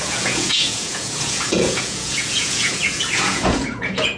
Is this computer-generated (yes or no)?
yes